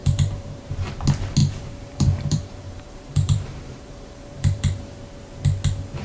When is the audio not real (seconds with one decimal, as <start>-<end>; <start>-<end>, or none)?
0.0-0.7; 1.4-5.0